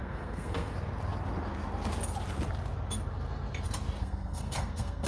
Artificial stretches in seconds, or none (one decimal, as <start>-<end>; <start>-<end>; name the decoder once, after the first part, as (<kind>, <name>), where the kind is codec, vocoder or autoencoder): 0.0-0.7 (codec, SNAC); 4.0-5.1